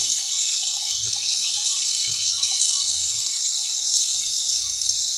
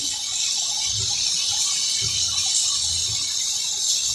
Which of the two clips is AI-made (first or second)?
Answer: first